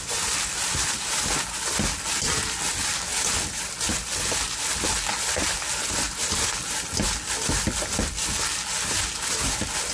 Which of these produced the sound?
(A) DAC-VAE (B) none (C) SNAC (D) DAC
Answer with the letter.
B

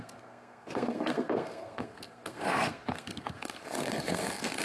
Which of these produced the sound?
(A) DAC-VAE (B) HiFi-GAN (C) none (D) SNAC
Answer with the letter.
D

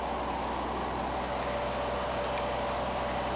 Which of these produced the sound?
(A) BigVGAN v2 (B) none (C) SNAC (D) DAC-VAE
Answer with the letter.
B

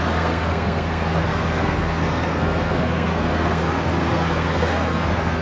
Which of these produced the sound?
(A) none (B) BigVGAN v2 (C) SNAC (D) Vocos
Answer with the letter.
C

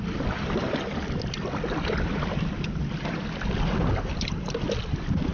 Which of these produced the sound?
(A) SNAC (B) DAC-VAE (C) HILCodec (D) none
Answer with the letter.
D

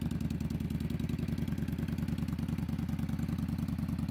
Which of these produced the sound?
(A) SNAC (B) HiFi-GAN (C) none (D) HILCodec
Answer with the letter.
C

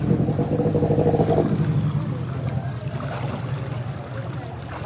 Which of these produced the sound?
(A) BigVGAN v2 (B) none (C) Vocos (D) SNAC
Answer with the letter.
B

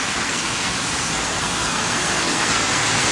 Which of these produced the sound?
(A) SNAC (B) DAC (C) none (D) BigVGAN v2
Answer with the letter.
A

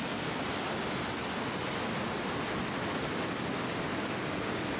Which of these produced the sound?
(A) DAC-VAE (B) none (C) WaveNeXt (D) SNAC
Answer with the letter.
B